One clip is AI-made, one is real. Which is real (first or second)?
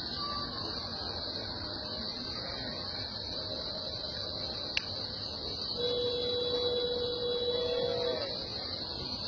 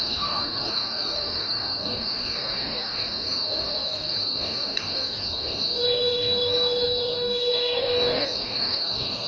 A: first